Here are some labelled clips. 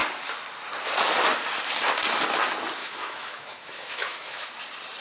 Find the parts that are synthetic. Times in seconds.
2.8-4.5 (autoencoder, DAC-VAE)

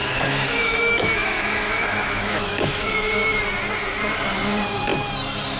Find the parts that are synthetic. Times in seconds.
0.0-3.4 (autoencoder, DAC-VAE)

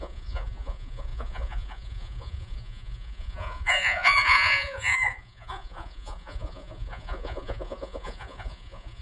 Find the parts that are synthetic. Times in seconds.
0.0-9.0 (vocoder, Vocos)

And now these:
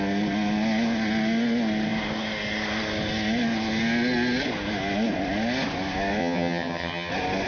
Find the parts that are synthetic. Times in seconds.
6.2-7.1 (vocoder, HiFi-GAN)

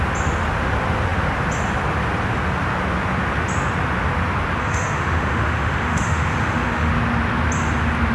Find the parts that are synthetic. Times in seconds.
4.6-6.9 (autoencoder, DAC-VAE)